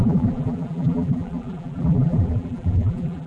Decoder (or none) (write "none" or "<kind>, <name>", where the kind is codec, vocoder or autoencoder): vocoder, BigVGAN v2